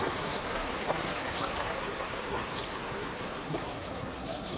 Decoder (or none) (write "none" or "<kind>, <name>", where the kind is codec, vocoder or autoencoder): codec, SNAC